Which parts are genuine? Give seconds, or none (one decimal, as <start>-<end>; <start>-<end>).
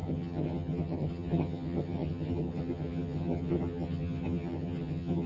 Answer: none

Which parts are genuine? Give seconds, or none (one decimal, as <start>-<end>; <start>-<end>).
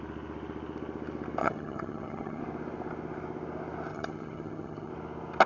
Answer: 0.0-1.4; 2.4-3.9; 4.9-5.5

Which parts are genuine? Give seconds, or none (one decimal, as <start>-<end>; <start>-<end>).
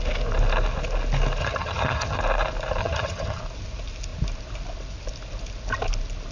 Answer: 0.0-1.4; 2.2-2.8; 3.4-6.3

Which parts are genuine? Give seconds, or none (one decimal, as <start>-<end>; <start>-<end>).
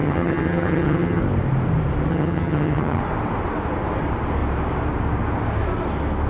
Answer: 1.2-2.1; 3.0-6.3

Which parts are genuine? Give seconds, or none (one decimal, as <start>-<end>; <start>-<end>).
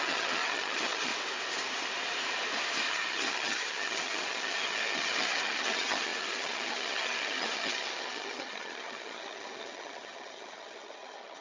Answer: 1.1-2.9